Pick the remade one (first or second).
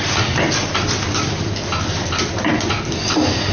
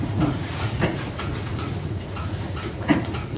second